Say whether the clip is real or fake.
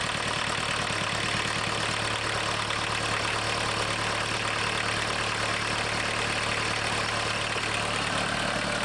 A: real